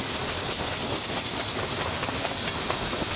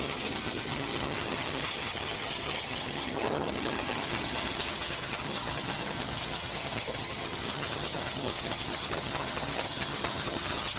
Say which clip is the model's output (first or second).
second